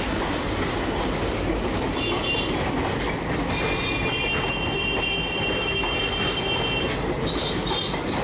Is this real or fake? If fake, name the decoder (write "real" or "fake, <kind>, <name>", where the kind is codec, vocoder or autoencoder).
real